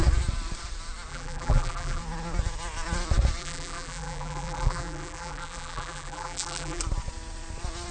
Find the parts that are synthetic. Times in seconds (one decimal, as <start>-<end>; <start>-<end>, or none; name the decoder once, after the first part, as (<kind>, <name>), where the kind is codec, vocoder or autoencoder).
1.1-2.0 (vocoder, BigVGAN v2); 3.4-6.8